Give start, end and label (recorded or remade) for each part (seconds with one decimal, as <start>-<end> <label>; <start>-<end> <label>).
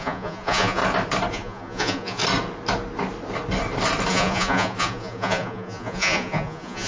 0.0-0.8 remade; 0.8-1.3 recorded; 1.3-2.2 remade; 2.2-4.1 recorded; 4.1-6.9 remade